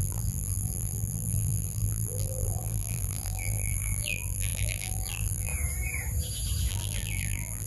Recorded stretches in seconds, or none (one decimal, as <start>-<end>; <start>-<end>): 5.5-6.7